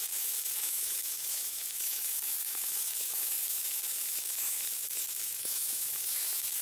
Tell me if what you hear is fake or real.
fake